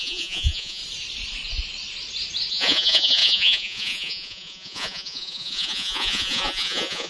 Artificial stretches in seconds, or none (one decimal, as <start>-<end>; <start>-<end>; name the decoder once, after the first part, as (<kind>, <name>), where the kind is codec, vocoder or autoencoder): 0.0-0.8 (vocoder, Vocos); 2.5-7.1